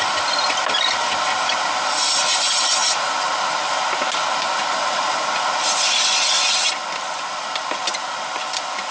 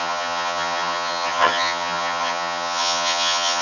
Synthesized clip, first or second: second